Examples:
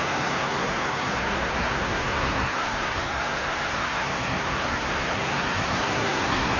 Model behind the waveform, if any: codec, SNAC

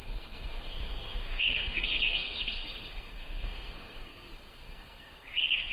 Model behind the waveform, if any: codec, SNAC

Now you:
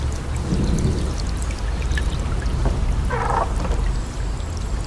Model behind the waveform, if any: none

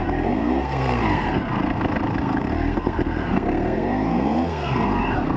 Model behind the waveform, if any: codec, SNAC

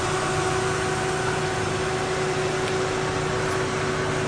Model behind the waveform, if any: none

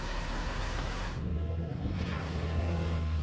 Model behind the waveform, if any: codec, SNAC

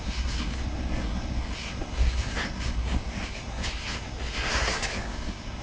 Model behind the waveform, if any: codec, SNAC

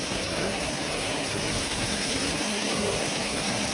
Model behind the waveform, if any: codec, SNAC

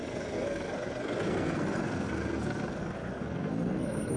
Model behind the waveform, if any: codec, SNAC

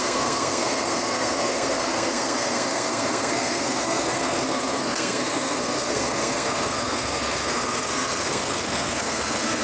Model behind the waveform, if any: codec, SNAC